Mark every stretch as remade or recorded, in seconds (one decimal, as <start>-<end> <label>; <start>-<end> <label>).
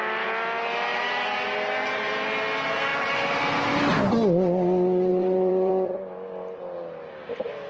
0.0-0.9 recorded; 0.9-2.1 remade; 2.1-2.9 recorded; 2.9-3.4 remade; 3.4-5.1 recorded; 5.1-5.7 remade; 5.7-7.7 recorded